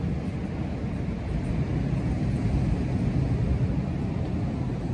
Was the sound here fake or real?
real